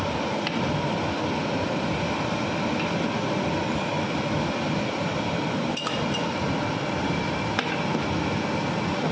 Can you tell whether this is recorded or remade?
recorded